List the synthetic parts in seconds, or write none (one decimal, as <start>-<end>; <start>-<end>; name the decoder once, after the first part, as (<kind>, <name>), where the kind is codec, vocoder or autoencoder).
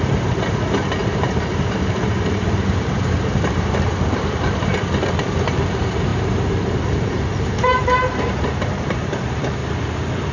0.0-4.7 (vocoder, BigVGAN v2); 5.5-9.6